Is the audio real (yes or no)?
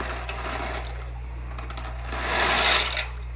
yes